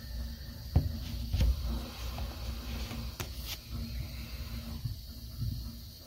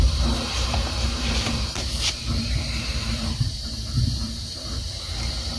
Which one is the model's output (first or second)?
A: second